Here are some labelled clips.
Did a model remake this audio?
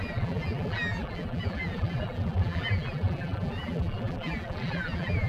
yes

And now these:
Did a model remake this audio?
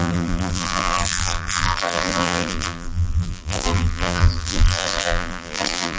yes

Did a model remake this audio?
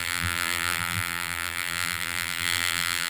yes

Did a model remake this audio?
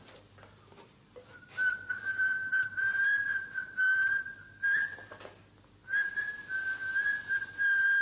no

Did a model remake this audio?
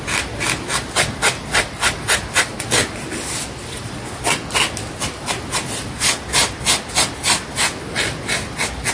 no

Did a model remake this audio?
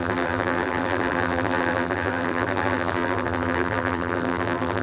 yes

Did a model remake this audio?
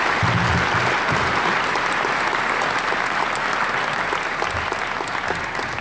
no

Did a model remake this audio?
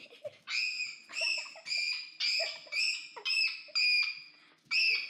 no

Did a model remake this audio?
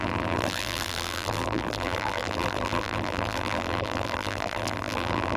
yes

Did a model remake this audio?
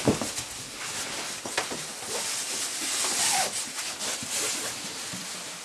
no